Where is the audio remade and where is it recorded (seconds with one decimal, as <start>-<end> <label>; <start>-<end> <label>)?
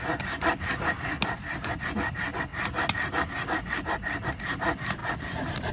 0.0-2.5 recorded; 2.5-4.3 remade; 4.3-5.0 recorded; 5.0-5.7 remade